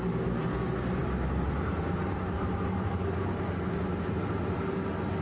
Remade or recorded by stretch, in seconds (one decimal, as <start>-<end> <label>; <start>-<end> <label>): 0.0-1.0 recorded; 1.0-4.1 remade; 4.1-5.2 recorded